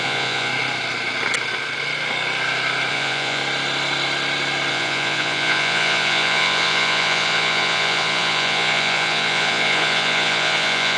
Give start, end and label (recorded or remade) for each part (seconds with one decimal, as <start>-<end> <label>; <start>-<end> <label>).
0.0-0.5 remade; 0.5-2.9 recorded; 2.9-3.4 remade; 3.4-4.7 recorded; 4.7-11.0 remade